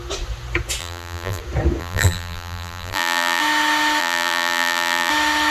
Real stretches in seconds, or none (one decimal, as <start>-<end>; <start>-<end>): 0.0-0.8; 1.4-1.8; 3.4-4.0; 5.1-5.5